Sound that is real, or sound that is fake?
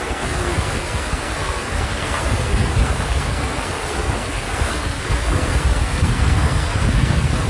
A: fake